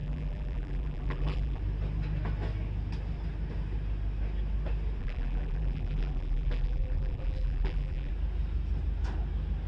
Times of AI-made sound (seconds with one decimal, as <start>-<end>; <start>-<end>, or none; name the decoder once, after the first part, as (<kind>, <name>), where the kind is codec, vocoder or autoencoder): 0.0-1.6 (vocoder, BigVGAN v2); 5.0-8.1